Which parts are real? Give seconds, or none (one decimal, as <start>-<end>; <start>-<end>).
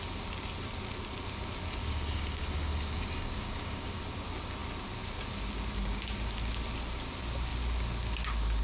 0.0-1.8; 4.0-8.6